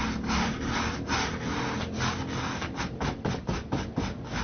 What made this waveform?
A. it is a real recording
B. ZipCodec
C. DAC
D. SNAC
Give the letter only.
A